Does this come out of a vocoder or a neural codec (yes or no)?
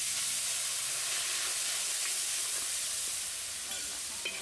no